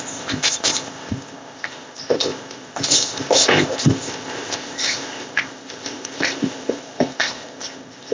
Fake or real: fake